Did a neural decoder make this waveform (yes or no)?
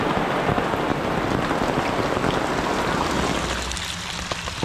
no